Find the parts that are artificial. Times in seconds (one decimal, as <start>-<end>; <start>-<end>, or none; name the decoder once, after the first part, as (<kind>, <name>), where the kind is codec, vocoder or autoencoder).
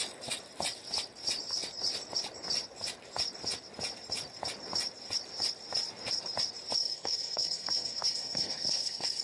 6.8-9.2 (codec, SNAC)